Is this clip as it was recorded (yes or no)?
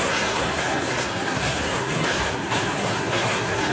no